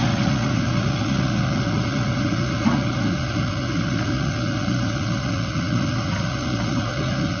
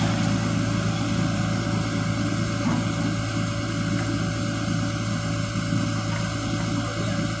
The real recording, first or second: second